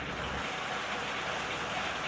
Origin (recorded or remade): recorded